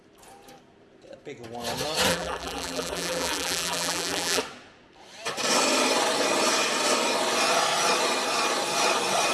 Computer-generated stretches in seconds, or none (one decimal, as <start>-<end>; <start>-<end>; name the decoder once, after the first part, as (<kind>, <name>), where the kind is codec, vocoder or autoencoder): 2.1-4.4 (vocoder, BigVGAN v2)